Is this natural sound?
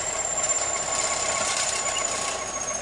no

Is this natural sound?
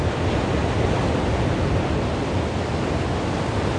yes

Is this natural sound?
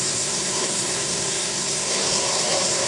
no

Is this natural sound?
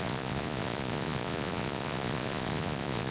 no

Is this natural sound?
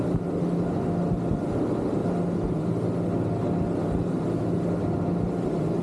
yes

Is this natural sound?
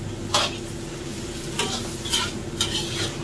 yes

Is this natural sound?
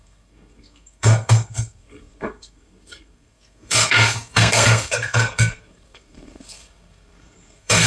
no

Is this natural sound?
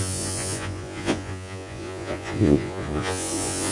no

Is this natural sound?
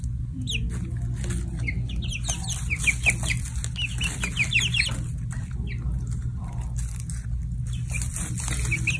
yes